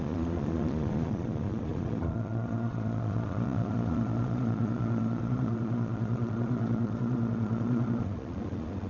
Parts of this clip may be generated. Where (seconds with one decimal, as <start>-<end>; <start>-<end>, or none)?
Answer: 0.0-8.9